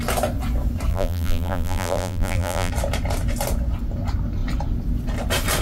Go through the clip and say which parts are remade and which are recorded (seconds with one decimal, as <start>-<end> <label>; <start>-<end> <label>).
0.0-0.9 recorded; 0.9-2.7 remade; 2.7-5.6 recorded